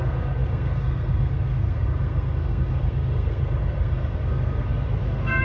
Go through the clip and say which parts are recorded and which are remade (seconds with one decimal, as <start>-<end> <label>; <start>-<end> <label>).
0.0-5.4 remade